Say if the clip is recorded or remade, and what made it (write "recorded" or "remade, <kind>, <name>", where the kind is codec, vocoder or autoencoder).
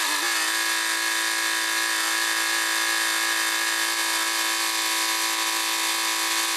recorded